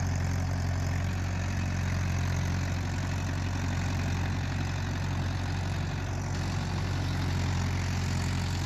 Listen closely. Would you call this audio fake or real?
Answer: fake